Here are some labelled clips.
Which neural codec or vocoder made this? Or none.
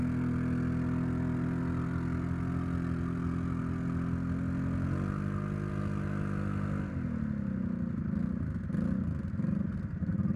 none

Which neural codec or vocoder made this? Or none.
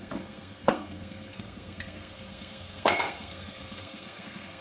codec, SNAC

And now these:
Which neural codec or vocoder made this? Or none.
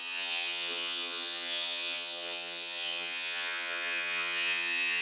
vocoder, HiFi-GAN